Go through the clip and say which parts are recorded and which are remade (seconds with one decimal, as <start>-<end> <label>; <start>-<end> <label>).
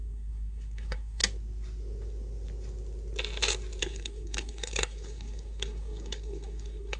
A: 0.0-1.2 remade; 1.2-3.8 recorded; 3.8-7.0 remade